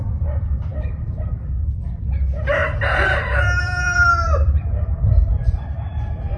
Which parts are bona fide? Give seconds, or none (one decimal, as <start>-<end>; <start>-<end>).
2.6-3.6